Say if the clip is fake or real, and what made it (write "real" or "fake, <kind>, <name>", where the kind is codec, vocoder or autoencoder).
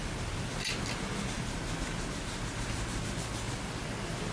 real